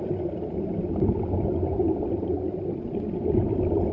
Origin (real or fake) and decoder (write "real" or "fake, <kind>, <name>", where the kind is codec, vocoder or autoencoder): real